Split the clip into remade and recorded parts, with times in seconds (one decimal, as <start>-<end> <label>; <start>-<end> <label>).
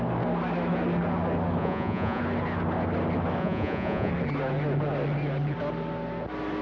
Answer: 0.0-1.6 recorded; 1.6-2.2 remade; 2.2-3.4 recorded; 3.4-4.1 remade; 4.1-6.6 recorded